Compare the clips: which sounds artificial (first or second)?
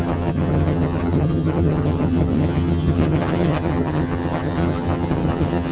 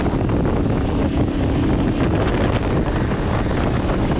first